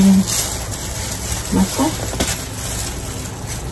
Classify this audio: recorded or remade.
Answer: recorded